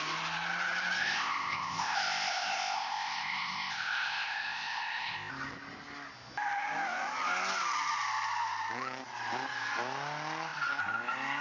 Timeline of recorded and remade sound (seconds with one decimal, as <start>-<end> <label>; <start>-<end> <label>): 0.0-1.0 recorded; 1.0-5.3 remade; 5.3-11.4 recorded